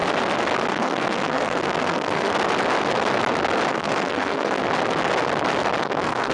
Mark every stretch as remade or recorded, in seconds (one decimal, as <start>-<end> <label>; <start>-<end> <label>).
0.0-0.7 recorded; 0.7-2.3 remade; 2.3-3.7 recorded; 3.7-4.6 remade; 4.6-5.8 recorded; 5.8-6.3 remade